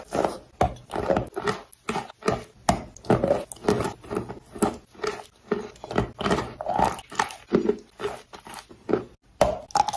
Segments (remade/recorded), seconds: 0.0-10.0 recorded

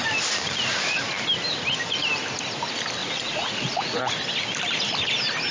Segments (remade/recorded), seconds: 0.0-3.0 recorded; 3.0-4.0 remade; 4.0-5.5 recorded

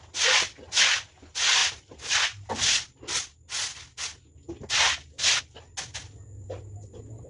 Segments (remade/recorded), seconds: 0.0-7.3 recorded

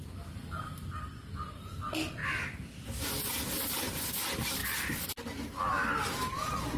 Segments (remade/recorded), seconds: 0.0-6.8 recorded